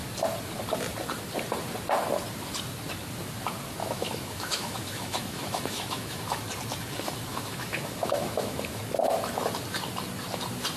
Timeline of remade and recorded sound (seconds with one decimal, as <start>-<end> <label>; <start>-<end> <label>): 0.0-3.8 recorded; 3.8-6.2 remade; 6.2-7.3 recorded; 7.3-8.8 remade; 8.8-10.8 recorded